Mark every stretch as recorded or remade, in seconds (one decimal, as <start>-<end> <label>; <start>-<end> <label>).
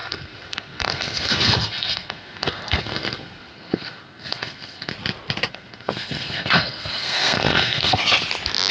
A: 0.0-4.9 remade; 4.9-5.5 recorded; 5.5-8.0 remade; 8.0-8.7 recorded